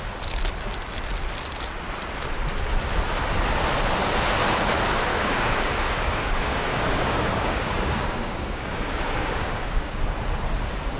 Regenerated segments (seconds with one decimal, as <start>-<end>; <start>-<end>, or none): 5.1-10.0